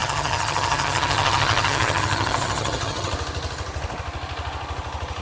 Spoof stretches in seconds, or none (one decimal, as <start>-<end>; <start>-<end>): 0.0-3.1